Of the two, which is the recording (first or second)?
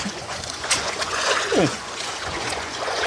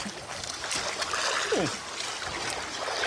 second